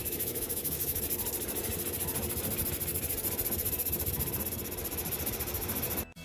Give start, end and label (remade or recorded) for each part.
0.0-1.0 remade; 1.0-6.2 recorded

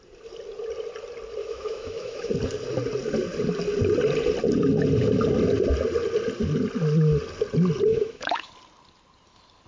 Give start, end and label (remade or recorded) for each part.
0.0-1.4 recorded; 1.4-2.3 remade; 2.3-7.9 recorded; 7.9-8.5 remade; 8.5-9.7 recorded

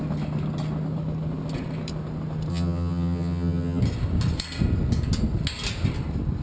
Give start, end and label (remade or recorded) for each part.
0.0-2.5 recorded; 2.5-3.8 remade; 3.8-6.4 recorded

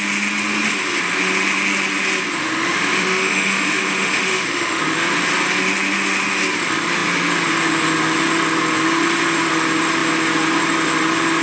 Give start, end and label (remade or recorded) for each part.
0.0-2.4 recorded; 2.4-4.8 remade; 4.8-11.4 recorded

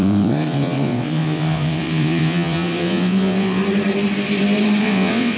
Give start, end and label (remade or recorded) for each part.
0.0-3.6 remade; 3.6-4.8 recorded; 4.8-5.4 remade

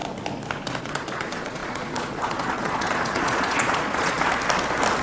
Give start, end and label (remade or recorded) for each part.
0.0-0.8 recorded; 0.8-4.3 remade; 4.3-5.0 recorded

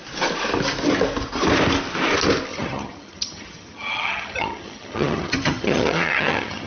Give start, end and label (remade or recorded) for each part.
0.0-2.5 recorded; 2.5-6.7 remade

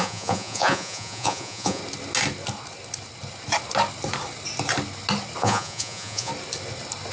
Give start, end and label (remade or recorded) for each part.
0.0-1.8 remade; 1.8-5.4 recorded; 5.4-6.3 remade; 6.3-7.1 recorded